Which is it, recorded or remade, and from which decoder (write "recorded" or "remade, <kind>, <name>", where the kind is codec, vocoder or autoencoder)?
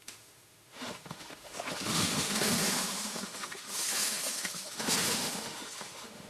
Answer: remade, autoencoder, DAC-VAE